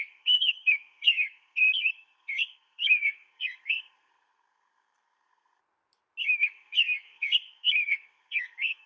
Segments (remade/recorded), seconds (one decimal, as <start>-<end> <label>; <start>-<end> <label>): 0.0-5.6 remade; 5.6-6.2 recorded; 6.2-8.9 remade